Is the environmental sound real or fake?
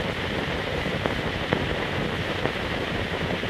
fake